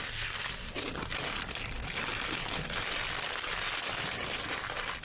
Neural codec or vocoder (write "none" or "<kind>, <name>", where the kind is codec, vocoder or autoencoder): none